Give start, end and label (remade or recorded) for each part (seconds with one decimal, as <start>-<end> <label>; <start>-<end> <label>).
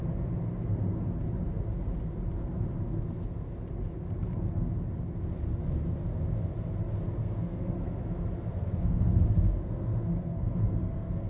0.0-7.2 recorded; 7.2-8.0 remade; 8.0-8.5 recorded; 8.5-11.3 remade